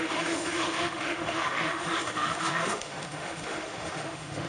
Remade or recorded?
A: remade